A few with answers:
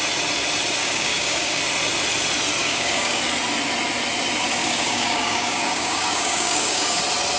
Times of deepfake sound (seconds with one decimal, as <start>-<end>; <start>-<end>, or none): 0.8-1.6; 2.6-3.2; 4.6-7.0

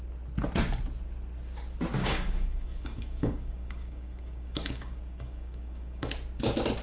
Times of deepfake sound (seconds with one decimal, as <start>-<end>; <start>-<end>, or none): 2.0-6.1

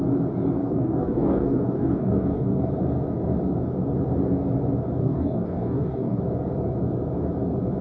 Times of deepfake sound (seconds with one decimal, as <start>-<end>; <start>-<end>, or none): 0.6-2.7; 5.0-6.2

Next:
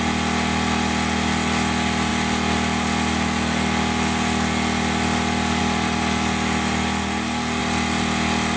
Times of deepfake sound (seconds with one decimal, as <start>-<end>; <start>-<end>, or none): none

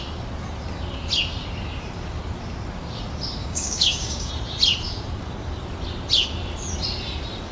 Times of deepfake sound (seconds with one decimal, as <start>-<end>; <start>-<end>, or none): 3.4-4.3

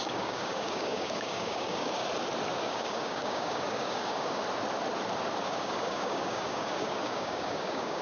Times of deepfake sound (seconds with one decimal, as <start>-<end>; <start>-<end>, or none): 0.0-2.0; 2.6-4.4; 5.4-8.0